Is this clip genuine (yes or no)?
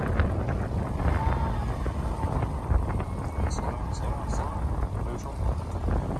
yes